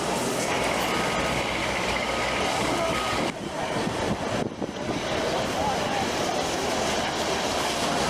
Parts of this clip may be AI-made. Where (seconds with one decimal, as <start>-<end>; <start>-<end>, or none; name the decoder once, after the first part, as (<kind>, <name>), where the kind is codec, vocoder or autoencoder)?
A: 1.6-3.2 (codec, DAC)